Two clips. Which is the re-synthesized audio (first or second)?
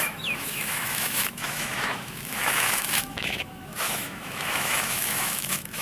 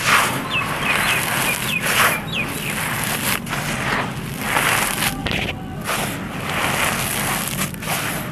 first